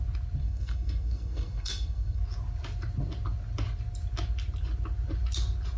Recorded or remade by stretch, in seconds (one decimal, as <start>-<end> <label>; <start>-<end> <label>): 0.0-0.4 recorded; 0.4-2.2 remade; 2.2-5.8 recorded

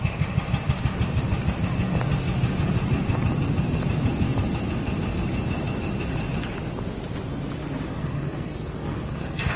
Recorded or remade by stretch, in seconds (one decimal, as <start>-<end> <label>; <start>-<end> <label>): 0.0-7.9 recorded; 7.9-9.6 remade

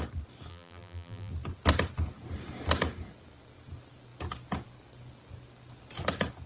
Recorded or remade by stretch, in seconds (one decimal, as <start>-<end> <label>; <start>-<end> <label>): 0.0-0.5 recorded; 0.5-1.3 remade; 1.3-6.5 recorded

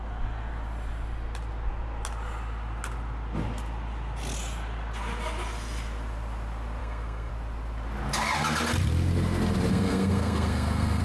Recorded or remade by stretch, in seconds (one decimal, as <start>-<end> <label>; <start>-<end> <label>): 0.0-6.8 recorded; 6.8-7.3 remade; 7.3-9.7 recorded; 9.7-11.0 remade

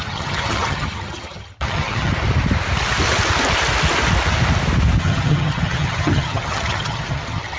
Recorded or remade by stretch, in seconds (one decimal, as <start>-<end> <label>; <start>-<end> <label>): 0.0-2.1 remade; 2.1-5.0 recorded; 5.0-7.6 remade

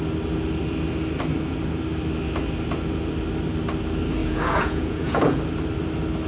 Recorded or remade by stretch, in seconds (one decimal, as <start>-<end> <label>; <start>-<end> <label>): 0.0-4.2 recorded; 4.2-5.4 remade; 5.4-6.3 recorded

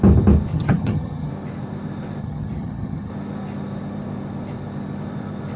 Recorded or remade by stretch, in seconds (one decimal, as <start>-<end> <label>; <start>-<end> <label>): 0.0-0.5 recorded; 0.5-1.3 remade; 1.3-2.2 recorded; 2.2-3.1 remade; 3.1-5.6 recorded

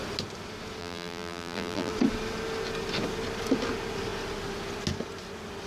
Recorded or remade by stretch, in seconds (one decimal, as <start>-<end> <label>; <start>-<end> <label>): 0.0-0.8 recorded; 0.8-1.9 remade; 1.9-5.7 recorded